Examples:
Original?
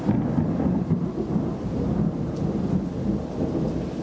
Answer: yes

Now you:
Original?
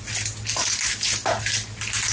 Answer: yes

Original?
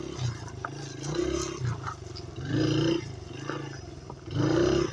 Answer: yes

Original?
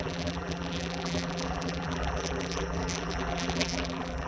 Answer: no